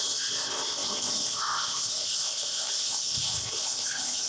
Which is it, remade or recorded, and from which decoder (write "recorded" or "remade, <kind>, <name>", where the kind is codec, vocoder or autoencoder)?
remade, codec, ZipCodec